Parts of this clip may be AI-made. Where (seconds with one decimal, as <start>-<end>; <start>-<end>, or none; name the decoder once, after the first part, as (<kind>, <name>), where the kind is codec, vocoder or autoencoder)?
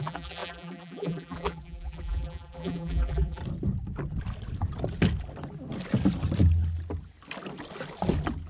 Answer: 0.0-3.4 (vocoder, BigVGAN v2)